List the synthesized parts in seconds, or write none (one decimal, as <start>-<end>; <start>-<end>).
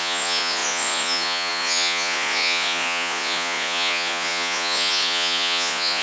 0.0-6.0